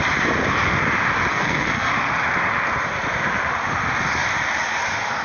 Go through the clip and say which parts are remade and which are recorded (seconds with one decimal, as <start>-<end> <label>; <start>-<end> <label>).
0.0-1.3 recorded; 1.3-1.9 remade; 1.9-5.2 recorded